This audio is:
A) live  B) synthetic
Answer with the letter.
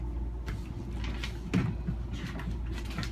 A